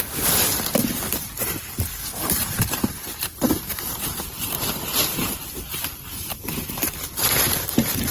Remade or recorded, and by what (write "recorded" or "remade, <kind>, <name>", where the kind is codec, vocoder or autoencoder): remade, vocoder, BigVGAN v2